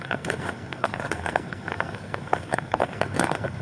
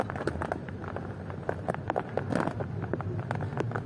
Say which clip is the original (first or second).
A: second